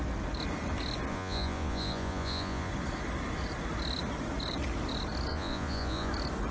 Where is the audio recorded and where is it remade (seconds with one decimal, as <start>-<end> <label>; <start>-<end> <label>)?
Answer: 0.0-1.1 recorded; 1.1-2.7 remade; 2.7-5.3 recorded; 5.3-6.1 remade; 6.1-6.5 recorded